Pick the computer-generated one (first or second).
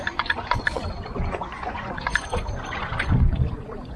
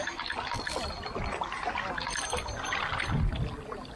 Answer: first